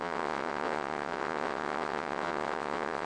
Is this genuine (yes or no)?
no